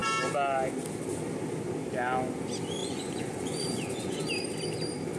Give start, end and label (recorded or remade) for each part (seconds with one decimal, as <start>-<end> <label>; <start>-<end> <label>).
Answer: 0.0-2.8 recorded; 2.8-4.3 remade; 4.3-5.2 recorded